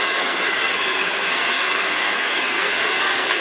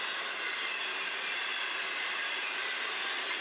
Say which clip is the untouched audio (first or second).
second